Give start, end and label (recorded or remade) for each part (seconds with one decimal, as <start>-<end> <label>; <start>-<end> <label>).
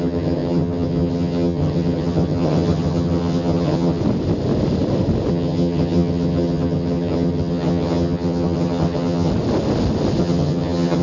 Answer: 0.0-4.0 remade; 4.0-5.3 recorded; 5.3-9.3 remade; 9.3-10.2 recorded; 10.2-11.0 remade